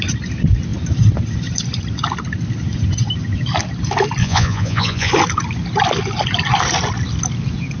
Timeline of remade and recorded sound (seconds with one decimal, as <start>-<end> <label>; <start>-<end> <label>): 0.0-4.2 recorded; 4.2-5.1 remade; 5.1-7.8 recorded